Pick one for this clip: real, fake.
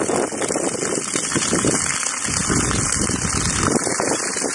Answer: real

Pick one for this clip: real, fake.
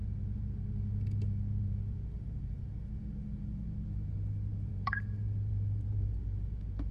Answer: fake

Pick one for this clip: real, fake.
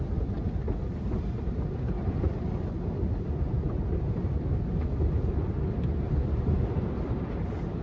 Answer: real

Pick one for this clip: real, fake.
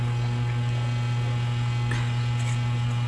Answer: real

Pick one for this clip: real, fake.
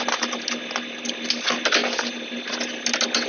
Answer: real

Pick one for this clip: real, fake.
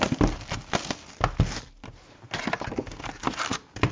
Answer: real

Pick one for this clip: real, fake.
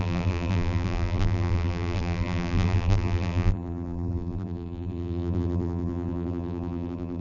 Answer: fake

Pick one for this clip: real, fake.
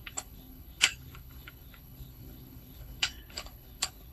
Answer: fake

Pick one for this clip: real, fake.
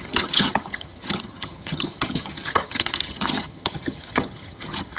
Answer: fake